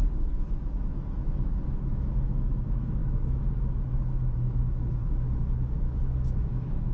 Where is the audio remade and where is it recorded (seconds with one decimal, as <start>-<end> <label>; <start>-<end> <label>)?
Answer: 0.0-6.9 remade